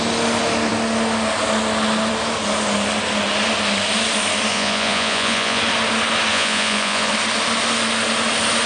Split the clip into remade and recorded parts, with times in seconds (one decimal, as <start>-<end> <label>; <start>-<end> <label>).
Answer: 0.0-4.5 recorded; 4.5-5.6 remade; 5.6-6.3 recorded; 6.3-7.1 remade; 7.1-8.7 recorded